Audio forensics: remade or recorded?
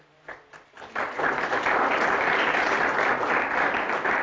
recorded